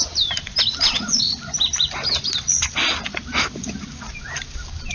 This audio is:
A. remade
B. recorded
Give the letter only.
B